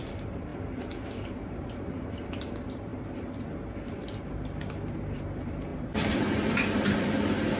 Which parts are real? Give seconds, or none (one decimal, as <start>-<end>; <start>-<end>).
2.9-4.9